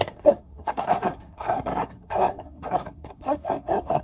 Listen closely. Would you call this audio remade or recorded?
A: remade